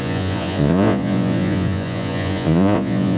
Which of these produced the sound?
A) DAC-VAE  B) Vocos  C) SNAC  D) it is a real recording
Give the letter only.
B